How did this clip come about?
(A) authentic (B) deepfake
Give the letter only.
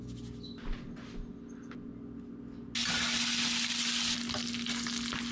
A